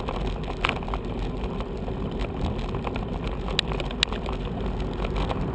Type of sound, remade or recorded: recorded